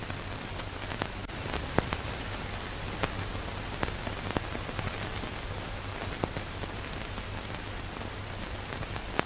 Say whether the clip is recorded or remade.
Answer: recorded